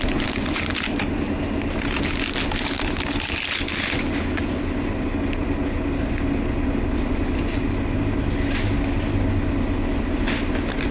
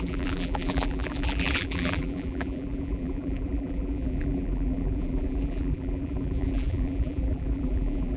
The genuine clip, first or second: first